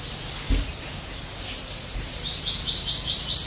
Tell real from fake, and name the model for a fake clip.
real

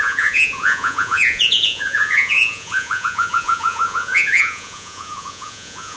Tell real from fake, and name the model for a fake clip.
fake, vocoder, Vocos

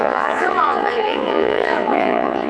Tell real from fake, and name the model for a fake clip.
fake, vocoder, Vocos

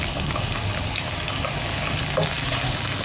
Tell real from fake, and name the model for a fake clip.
real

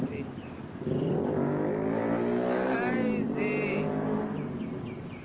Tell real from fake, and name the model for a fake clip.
real